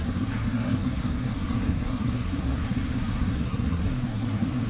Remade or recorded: remade